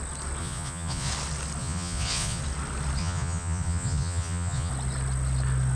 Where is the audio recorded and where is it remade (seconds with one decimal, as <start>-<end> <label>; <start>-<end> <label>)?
0.0-0.4 recorded; 0.4-1.1 remade; 1.1-1.6 recorded; 1.6-2.4 remade; 2.4-3.0 recorded; 3.0-4.7 remade; 4.7-5.8 recorded